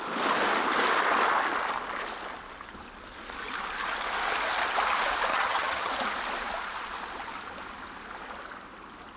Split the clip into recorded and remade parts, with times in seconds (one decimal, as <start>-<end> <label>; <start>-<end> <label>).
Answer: 0.0-5.3 recorded; 5.3-5.9 remade; 5.9-9.2 recorded